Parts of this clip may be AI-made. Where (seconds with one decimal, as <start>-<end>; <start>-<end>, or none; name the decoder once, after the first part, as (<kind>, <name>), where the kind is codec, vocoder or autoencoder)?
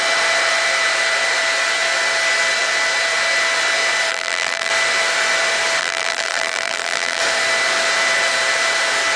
4.1-4.7 (vocoder, BigVGAN v2); 5.8-7.2